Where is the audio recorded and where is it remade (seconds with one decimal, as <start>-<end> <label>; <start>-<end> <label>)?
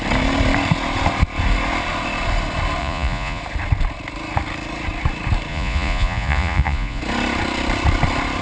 0.0-2.8 recorded; 2.8-3.4 remade; 3.4-5.5 recorded; 5.5-7.0 remade; 7.0-8.4 recorded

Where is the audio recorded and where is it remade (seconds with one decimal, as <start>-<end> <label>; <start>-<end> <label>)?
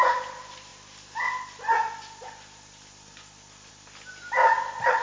0.0-5.0 recorded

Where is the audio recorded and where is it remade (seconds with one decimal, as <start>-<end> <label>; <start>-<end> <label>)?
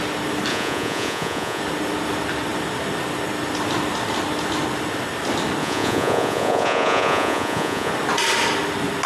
0.0-0.5 recorded; 0.5-1.6 remade; 1.6-5.6 recorded; 5.6-7.9 remade; 7.9-9.1 recorded